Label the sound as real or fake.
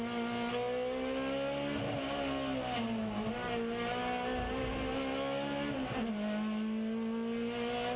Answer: real